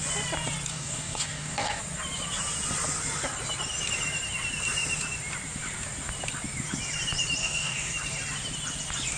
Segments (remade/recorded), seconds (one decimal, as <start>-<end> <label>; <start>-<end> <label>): 0.0-0.7 recorded; 0.7-1.8 remade; 1.8-7.4 recorded; 7.4-7.9 remade; 7.9-9.2 recorded

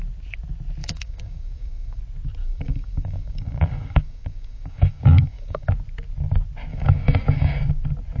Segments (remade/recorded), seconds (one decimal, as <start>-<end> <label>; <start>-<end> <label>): 0.0-0.8 recorded; 0.8-2.0 remade; 2.0-2.4 recorded; 2.4-5.7 remade; 5.7-6.7 recorded; 6.7-7.7 remade; 7.7-8.2 recorded

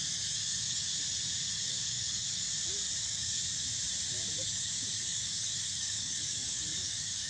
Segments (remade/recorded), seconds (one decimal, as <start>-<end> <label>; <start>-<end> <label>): 0.0-0.9 remade; 0.9-1.5 recorded; 1.5-2.5 remade; 2.5-3.0 recorded; 3.0-3.4 remade; 3.4-4.4 recorded; 4.4-7.3 remade

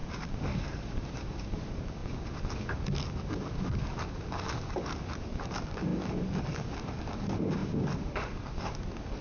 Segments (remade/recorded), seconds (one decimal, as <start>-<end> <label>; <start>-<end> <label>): 0.0-9.2 remade

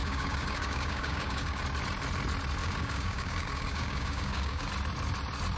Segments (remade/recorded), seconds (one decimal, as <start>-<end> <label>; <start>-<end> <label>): 0.0-1.6 remade; 1.6-2.6 recorded; 2.6-4.7 remade; 4.7-5.6 recorded

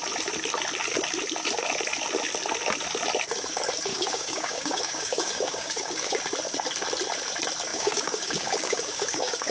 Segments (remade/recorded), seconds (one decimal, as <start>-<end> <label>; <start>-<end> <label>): 0.0-3.9 recorded; 3.9-6.2 remade; 6.2-7.7 recorded; 7.7-9.5 remade

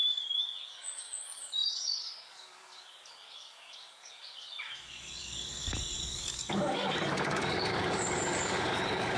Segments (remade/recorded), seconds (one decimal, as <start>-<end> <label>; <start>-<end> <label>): 0.0-9.2 remade